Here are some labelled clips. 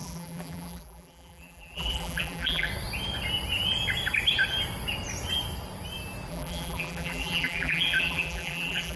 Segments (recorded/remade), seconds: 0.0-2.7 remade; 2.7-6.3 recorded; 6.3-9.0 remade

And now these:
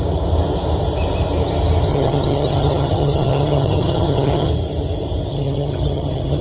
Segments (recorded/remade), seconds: 0.0-1.9 recorded; 1.9-4.5 remade; 4.5-5.3 recorded; 5.3-6.4 remade

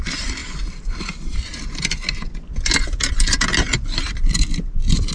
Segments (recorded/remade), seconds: 0.0-0.4 remade; 0.4-1.0 recorded; 1.0-1.5 remade; 1.5-2.7 recorded; 2.7-5.1 remade

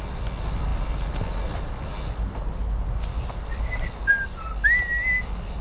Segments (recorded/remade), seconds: 0.0-5.6 recorded

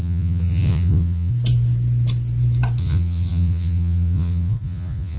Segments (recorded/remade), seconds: 0.0-1.3 remade; 1.3-2.8 recorded; 2.8-5.2 remade